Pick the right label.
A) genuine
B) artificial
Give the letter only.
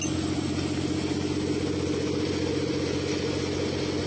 A